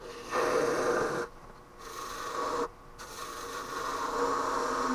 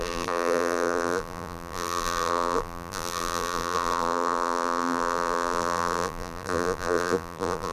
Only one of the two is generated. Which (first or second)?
second